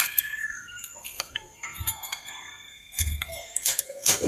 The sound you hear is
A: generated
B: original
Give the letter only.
A